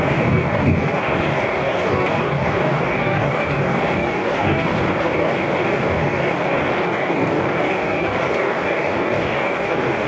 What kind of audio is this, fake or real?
fake